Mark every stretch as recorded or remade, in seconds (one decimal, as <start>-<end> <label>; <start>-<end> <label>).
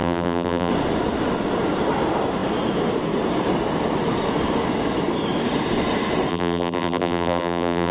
0.0-0.7 remade; 0.7-6.3 recorded; 6.3-7.9 remade